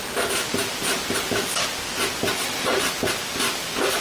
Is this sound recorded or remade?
recorded